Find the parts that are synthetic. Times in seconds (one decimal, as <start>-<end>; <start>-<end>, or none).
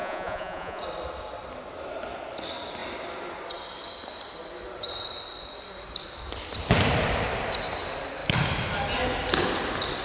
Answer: 0.0-0.8